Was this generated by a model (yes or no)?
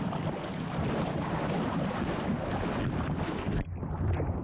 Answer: no